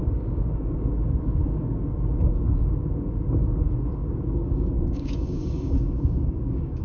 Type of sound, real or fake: fake